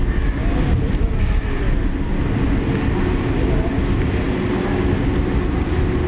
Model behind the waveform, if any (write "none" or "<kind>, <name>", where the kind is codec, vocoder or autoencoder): none